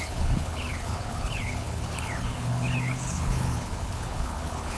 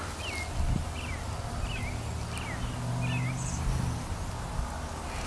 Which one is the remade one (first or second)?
first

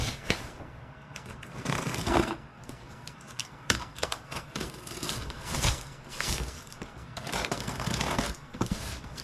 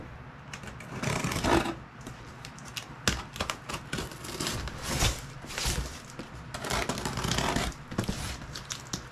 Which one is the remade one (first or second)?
first